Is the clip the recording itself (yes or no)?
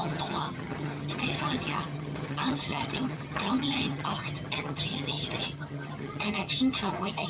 no